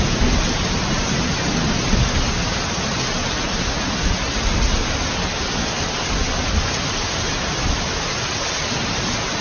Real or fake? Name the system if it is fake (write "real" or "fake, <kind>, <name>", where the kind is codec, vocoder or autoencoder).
real